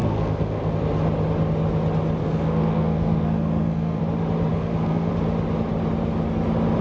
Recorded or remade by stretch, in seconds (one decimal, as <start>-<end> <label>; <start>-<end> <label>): 0.0-0.7 remade; 0.7-2.2 recorded; 2.2-4.0 remade; 4.0-4.5 recorded; 4.5-5.1 remade; 5.1-6.8 recorded